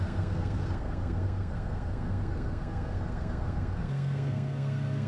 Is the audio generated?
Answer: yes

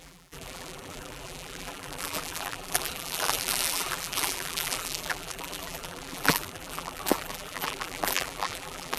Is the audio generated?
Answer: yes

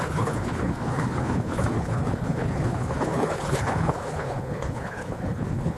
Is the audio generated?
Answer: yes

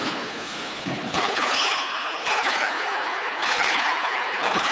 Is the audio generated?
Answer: yes